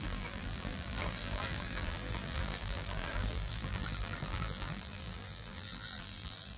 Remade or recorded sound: remade